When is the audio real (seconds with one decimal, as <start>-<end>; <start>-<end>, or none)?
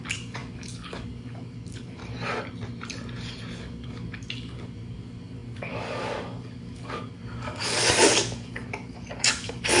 2.0-3.6